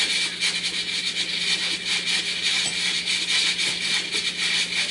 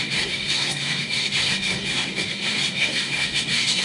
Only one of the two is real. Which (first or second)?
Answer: first